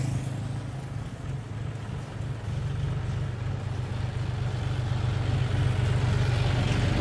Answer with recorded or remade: recorded